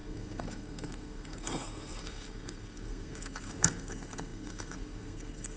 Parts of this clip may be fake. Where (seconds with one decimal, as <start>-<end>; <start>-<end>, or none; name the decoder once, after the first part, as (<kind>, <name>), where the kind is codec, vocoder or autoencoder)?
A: 0.0-5.6 (codec, SNAC)